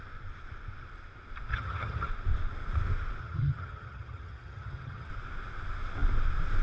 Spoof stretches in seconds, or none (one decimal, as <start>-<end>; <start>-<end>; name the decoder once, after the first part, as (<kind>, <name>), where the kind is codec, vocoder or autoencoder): 1.5-2.1 (vocoder, HiFi-GAN); 3.2-5.1